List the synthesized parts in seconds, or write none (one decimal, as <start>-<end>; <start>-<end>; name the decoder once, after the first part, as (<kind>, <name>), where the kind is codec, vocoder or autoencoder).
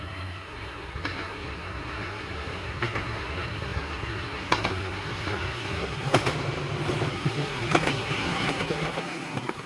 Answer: 0.0-6.2 (codec, SNAC); 7.1-9.7